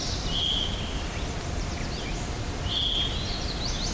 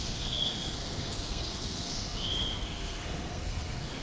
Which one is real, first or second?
first